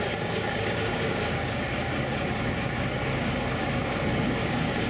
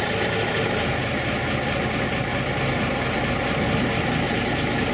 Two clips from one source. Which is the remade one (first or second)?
first